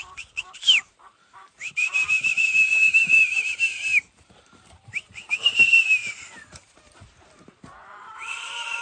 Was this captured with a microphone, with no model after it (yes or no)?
no